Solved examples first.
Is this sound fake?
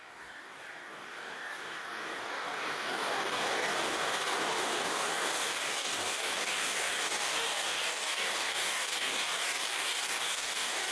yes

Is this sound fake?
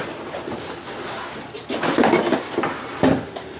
no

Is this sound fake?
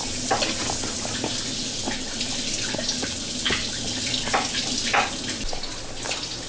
no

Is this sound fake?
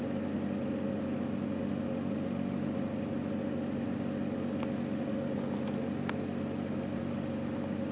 no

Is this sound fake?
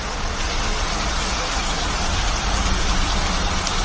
no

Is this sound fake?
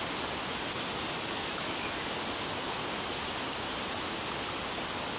no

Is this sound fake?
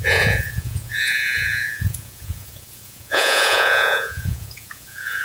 yes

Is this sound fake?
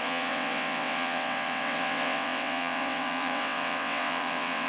yes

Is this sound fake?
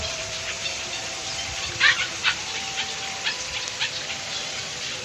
yes